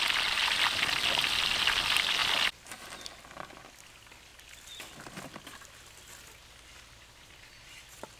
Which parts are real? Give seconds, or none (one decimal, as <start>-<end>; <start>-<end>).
0.0-8.2